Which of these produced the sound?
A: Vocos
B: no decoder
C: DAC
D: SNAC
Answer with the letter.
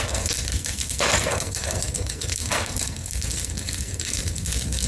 D